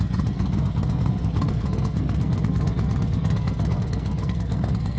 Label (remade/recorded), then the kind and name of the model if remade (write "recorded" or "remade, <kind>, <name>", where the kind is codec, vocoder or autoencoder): remade, codec, SNAC